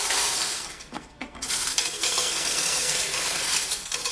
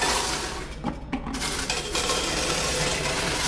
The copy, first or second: first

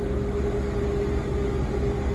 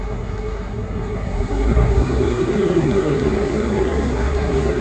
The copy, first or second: second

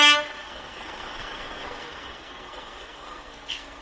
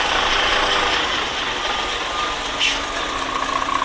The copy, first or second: first